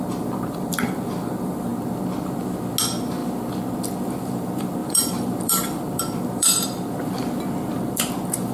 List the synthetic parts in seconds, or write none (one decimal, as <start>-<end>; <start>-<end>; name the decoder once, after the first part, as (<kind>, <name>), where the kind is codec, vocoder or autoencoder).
0.0-1.7 (vocoder, BigVGAN v2); 2.8-3.2; 4.1-8.5